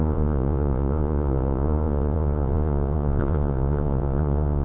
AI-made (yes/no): yes